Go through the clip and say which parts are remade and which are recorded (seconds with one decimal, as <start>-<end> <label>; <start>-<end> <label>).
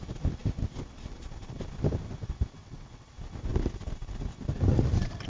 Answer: 0.0-2.6 recorded; 2.6-3.1 remade; 3.1-5.3 recorded